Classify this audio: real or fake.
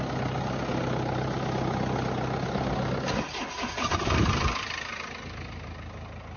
real